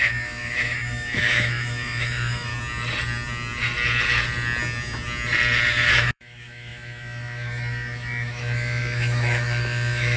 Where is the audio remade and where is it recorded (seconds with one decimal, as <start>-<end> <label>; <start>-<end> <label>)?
0.0-2.5 remade; 2.5-5.9 recorded; 5.9-10.2 remade